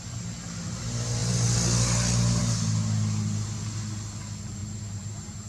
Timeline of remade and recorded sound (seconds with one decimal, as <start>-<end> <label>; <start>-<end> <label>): 0.0-4.6 recorded; 4.6-5.5 remade